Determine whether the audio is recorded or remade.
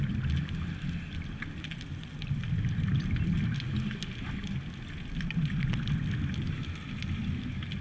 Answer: recorded